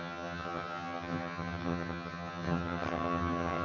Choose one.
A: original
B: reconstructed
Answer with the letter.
B